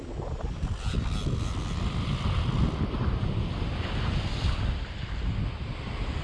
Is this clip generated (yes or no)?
no